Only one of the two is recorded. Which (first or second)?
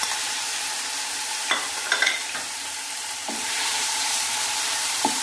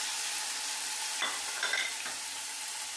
second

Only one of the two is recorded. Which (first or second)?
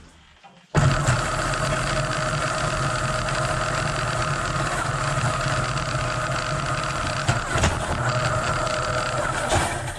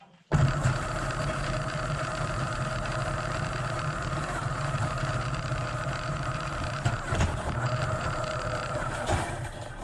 first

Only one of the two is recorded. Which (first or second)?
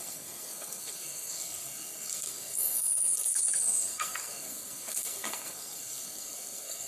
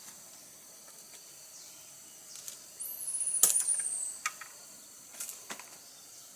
second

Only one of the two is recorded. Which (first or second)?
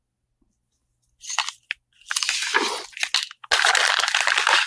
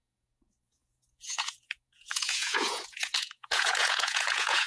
first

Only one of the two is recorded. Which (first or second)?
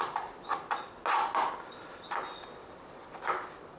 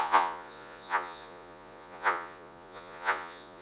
first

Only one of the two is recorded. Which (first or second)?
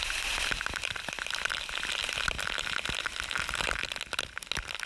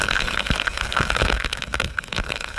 first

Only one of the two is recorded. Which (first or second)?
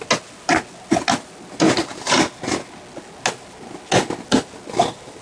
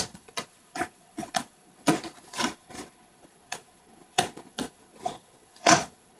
first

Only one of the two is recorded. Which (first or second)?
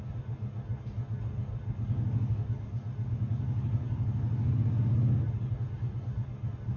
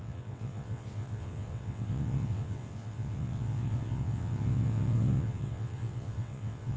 first